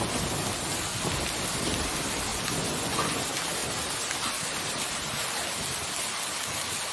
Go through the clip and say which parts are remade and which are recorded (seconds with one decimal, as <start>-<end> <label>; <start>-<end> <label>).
0.0-2.3 recorded; 2.3-3.2 remade; 3.2-6.9 recorded